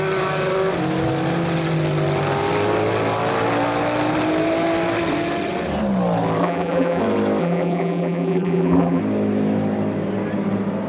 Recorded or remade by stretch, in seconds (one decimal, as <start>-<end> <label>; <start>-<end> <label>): 0.0-6.4 recorded; 6.4-7.0 remade; 7.0-7.4 recorded; 7.4-9.0 remade; 9.0-10.9 recorded